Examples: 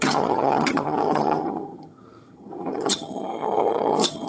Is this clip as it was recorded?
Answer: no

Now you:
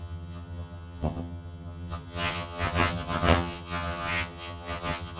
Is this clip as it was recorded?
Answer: no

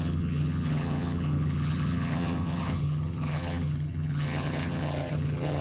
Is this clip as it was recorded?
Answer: no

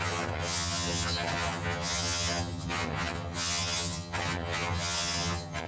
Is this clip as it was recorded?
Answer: no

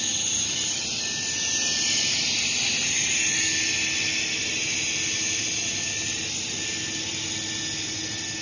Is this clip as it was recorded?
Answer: yes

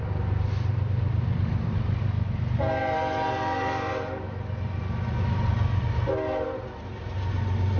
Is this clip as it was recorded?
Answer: yes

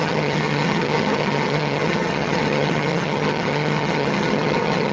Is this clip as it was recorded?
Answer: no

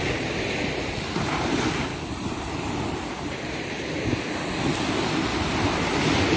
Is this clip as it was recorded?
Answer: yes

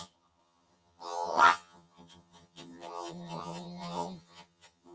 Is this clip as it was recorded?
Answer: no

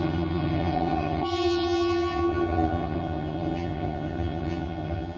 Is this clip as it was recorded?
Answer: no